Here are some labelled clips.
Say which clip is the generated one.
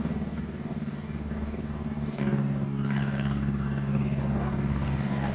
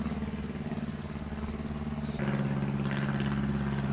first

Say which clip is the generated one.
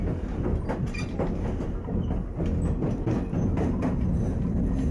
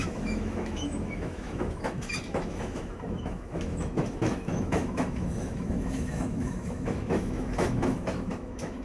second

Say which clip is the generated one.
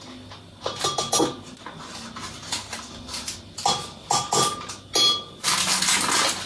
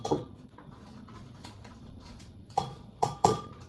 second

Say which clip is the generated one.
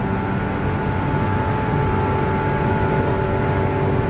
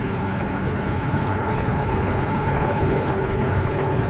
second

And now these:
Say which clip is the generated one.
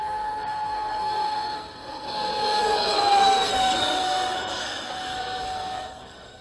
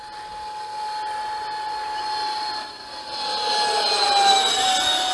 first